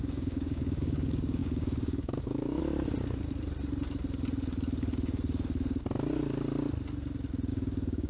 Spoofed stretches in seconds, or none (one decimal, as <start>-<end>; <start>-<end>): 0.0-2.6; 7.5-8.1